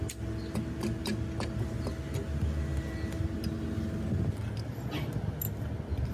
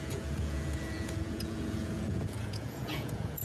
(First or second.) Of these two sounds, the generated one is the second